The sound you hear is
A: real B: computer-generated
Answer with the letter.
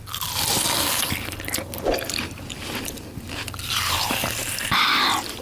A